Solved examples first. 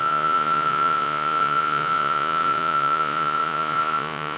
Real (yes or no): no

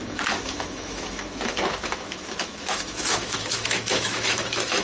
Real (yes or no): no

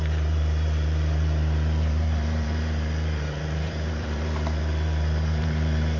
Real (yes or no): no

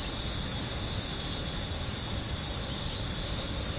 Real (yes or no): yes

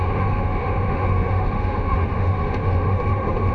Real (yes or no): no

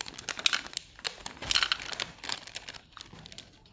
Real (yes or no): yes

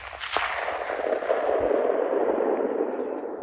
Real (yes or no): yes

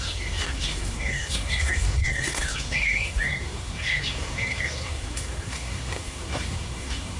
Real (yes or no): no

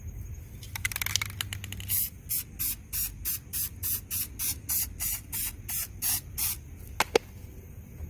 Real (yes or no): yes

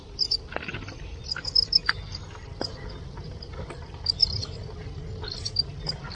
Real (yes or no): yes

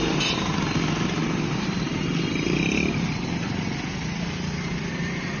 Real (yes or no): yes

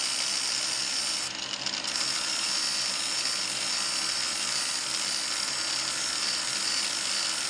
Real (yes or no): yes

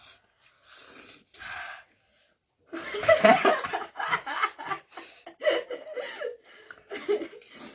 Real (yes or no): yes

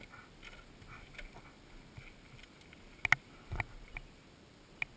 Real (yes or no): yes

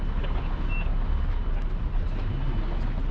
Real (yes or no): yes